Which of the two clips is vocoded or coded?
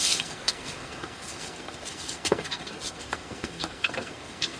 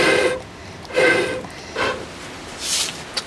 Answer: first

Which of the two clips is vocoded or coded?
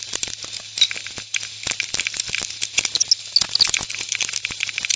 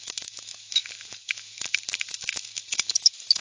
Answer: second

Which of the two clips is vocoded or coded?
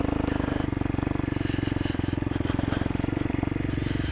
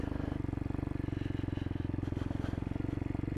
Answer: first